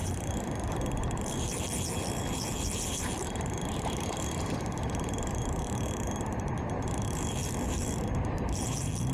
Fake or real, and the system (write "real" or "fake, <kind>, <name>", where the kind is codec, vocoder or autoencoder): fake, vocoder, BigVGAN v2